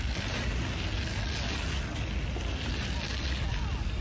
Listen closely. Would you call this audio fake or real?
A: real